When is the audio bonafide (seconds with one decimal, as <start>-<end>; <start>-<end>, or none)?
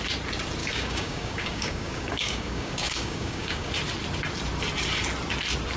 0.0-0.6; 3.7-5.8